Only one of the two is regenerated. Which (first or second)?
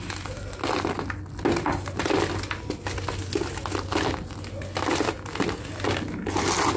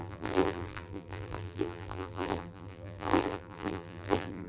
second